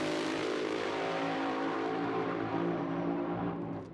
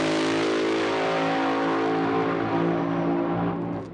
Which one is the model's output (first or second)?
first